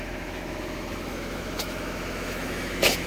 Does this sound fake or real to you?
fake